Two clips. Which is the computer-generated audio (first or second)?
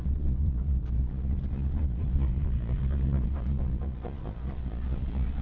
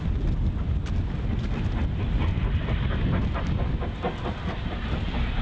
first